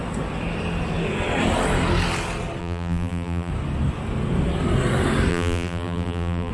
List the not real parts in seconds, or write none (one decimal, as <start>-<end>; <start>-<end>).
2.6-3.5; 5.3-6.5